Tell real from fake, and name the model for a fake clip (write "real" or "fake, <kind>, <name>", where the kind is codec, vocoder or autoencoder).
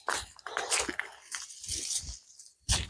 fake, vocoder, BigVGAN v2